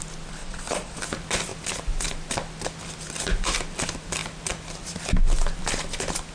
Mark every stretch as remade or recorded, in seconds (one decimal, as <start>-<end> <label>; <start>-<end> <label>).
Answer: 0.0-0.4 recorded; 0.4-1.0 remade; 1.0-6.3 recorded